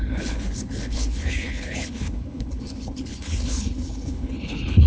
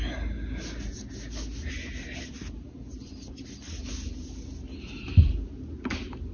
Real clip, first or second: second